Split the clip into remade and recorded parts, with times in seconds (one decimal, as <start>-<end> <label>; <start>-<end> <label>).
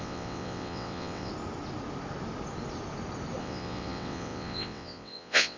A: 0.0-1.3 remade; 1.3-3.4 recorded; 3.4-5.6 remade